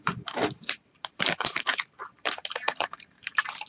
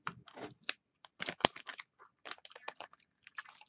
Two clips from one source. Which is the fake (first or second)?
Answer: first